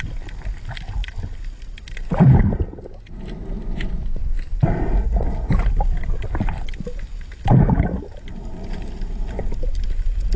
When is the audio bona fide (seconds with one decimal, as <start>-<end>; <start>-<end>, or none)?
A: 0.0-10.4